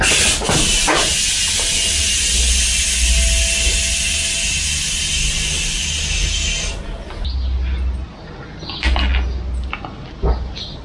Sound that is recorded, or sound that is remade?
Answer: recorded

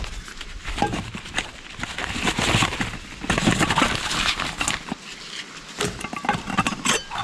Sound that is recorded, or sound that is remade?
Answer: recorded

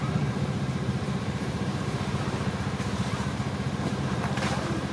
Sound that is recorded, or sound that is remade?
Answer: remade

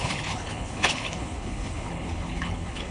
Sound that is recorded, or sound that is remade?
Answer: remade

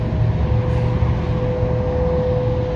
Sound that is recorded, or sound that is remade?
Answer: recorded